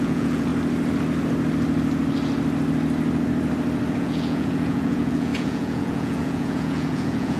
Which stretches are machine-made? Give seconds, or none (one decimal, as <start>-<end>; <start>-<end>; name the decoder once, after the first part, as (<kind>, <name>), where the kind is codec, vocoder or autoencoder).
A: 0.0-0.5 (vocoder, Vocos); 4.0-7.4